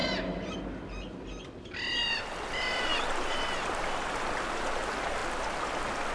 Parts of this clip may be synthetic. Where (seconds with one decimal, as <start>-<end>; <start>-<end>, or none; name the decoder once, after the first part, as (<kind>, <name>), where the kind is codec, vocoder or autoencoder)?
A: none